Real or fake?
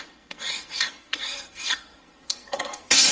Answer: fake